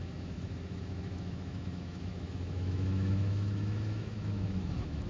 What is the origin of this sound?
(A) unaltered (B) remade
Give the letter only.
B